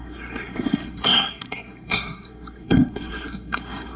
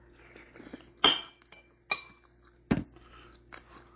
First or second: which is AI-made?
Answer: first